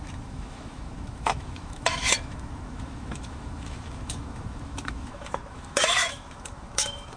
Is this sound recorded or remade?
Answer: remade